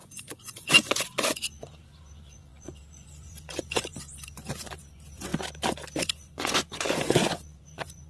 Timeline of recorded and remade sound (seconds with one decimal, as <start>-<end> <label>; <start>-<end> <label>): 0.0-5.3 remade; 5.3-6.0 recorded; 6.0-8.1 remade